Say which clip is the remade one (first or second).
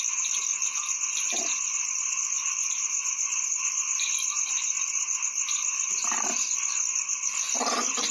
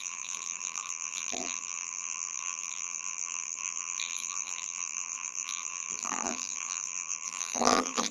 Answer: second